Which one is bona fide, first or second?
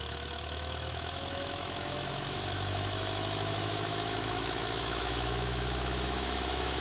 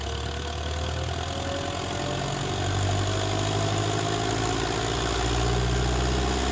second